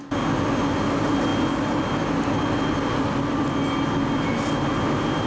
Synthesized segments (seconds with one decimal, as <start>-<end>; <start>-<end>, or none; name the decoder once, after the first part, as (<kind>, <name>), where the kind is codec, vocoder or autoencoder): none